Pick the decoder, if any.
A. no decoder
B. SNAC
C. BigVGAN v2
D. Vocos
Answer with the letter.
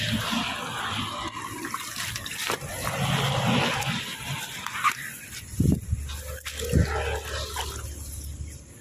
A